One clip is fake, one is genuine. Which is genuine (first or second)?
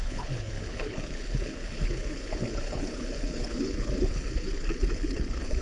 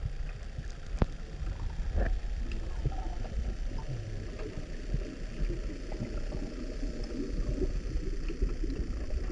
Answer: second